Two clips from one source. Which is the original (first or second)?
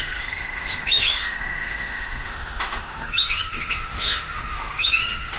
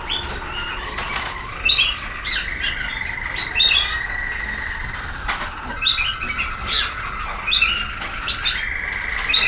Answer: second